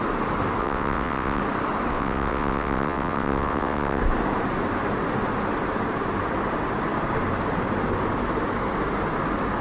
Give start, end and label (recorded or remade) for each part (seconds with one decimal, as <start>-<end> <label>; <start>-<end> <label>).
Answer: 0.0-0.6 recorded; 0.6-1.4 remade; 1.4-1.9 recorded; 1.9-4.0 remade; 4.0-9.6 recorded